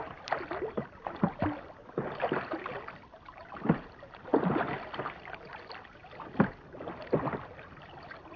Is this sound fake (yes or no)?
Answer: no